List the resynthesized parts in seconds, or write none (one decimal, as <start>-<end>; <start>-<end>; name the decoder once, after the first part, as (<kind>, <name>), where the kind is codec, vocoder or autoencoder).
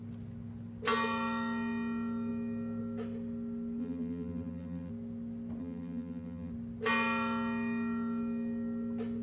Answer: 3.8-4.9 (vocoder, BigVGAN v2); 5.6-6.5